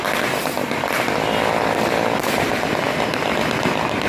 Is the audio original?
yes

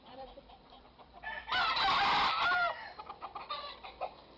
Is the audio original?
no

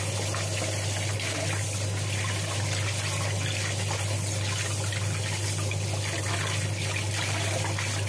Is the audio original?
yes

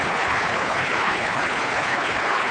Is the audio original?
no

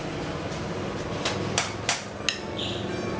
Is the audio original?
yes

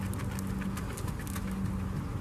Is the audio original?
yes